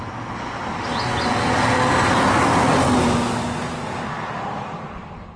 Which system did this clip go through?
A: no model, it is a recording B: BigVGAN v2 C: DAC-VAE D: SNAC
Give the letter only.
A